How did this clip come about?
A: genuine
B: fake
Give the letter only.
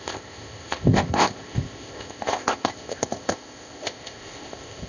B